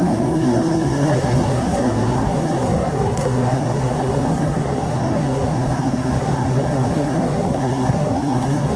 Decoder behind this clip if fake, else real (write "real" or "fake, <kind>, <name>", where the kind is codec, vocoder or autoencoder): fake, codec, SNAC